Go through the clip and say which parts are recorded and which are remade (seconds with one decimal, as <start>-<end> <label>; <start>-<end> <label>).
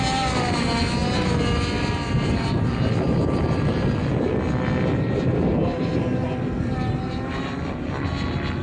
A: 0.0-8.6 recorded